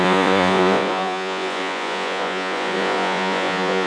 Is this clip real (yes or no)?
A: no